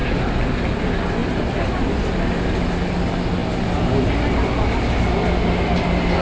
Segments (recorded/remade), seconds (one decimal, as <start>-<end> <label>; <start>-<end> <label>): 0.0-1.2 recorded; 1.2-1.8 remade; 1.8-6.2 recorded